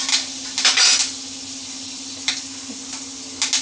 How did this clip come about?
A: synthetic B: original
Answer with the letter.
B